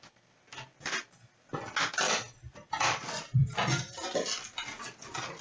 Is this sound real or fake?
real